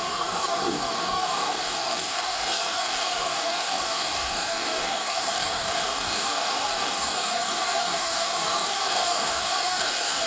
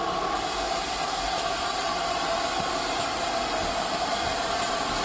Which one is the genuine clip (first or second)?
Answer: second